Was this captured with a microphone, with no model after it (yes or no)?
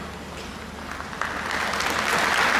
yes